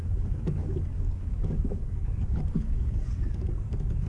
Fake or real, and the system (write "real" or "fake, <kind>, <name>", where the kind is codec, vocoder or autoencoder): fake, codec, DAC